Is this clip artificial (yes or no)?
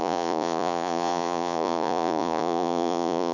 yes